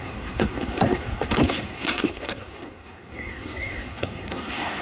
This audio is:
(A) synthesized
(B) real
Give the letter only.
A